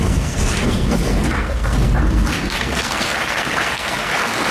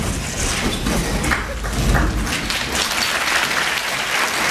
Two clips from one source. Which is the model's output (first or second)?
first